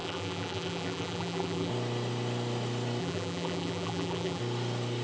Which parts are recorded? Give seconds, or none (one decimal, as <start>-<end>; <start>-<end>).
1.7-3.0; 4.4-5.0